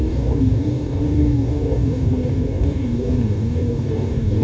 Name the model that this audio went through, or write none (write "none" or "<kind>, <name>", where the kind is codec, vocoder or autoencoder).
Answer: codec, DAC